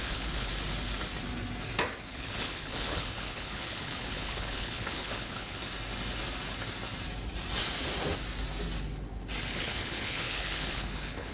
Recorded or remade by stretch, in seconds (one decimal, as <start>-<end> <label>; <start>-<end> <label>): 0.0-0.5 remade; 0.5-2.1 recorded; 2.1-5.6 remade; 5.6-9.5 recorded; 9.5-11.3 remade